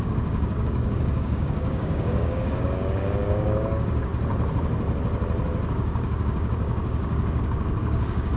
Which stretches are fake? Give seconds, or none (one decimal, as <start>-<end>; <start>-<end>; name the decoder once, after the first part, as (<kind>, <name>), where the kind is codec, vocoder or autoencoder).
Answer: 0.0-4.1 (codec, DAC); 5.7-8.4